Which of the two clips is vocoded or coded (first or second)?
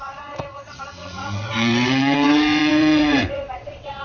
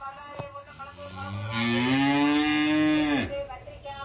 first